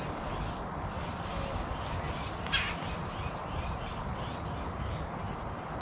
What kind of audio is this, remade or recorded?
recorded